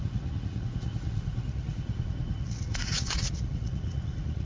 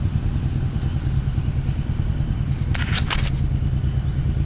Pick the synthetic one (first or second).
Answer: first